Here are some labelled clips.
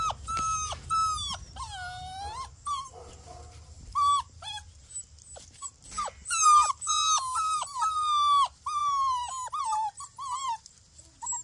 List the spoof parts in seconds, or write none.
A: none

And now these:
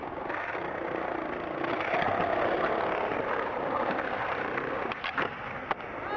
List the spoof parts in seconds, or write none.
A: 3.1-4.8 (vocoder, BigVGAN v2)

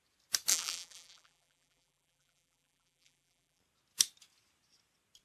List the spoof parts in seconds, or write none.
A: 0.5-3.6 (vocoder, BigVGAN v2)

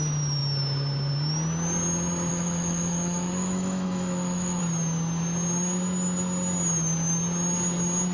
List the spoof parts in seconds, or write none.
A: 2.3-4.6 (autoencoder, DAC-VAE)

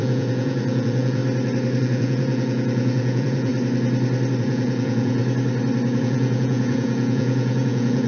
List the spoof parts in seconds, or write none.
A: 0.0-1.2 (vocoder, Vocos); 1.8-3.5; 4.4-5.2; 6.0-8.1

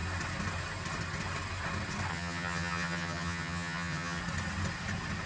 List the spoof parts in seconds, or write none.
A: 2.1-4.2 (vocoder, HiFi-GAN)